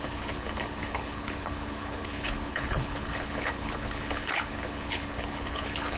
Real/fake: fake